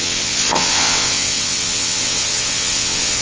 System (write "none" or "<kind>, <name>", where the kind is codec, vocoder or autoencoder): vocoder, WaveNeXt